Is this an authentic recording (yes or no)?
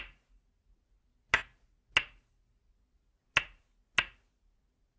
yes